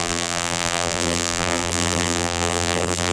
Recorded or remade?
remade